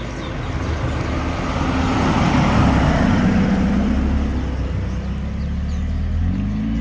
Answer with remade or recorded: recorded